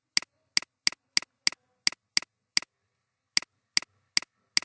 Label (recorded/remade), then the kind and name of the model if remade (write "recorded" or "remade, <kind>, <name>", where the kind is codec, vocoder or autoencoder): recorded